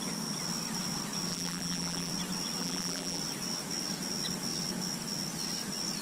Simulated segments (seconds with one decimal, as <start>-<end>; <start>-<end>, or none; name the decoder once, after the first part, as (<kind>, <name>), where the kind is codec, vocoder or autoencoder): 1.3-2.1 (vocoder, BigVGAN v2); 2.6-3.2